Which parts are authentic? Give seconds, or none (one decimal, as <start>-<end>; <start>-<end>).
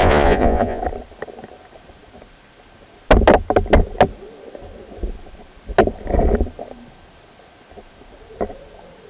0.8-9.1